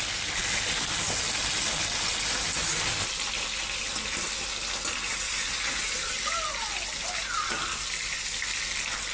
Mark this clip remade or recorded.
recorded